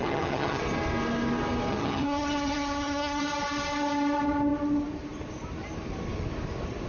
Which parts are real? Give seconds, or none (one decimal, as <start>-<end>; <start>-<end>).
0.6-1.7; 3.2-6.9